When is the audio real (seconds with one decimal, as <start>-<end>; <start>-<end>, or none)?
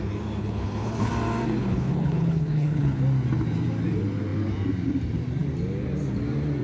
0.0-0.4; 1.1-1.6; 3.0-6.6